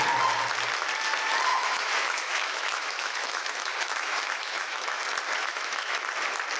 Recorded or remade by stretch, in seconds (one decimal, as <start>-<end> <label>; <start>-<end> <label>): 0.0-1.5 recorded; 1.5-5.0 remade; 5.0-5.4 recorded; 5.4-6.0 remade; 6.0-6.6 recorded